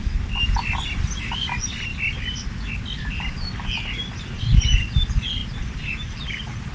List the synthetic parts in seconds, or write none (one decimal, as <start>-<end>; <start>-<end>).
none

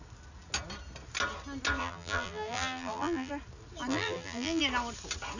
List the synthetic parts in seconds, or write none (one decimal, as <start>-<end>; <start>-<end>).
1.8-3.3; 3.9-4.6

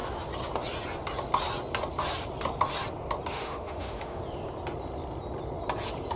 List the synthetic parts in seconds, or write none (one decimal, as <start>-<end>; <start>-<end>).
3.3-4.2

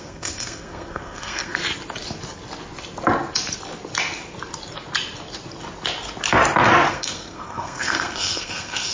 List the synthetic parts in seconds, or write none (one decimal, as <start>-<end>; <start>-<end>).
0.0-1.6; 6.9-8.9

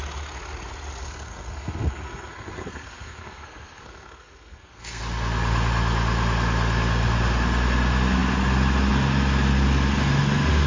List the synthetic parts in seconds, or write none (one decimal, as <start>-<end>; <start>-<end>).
1.0-5.0

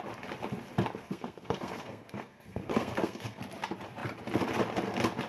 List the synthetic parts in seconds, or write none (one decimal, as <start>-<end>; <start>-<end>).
1.0-3.4